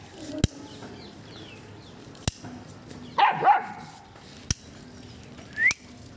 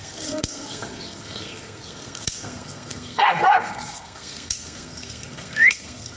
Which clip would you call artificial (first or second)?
second